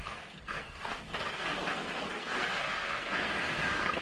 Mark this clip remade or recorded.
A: remade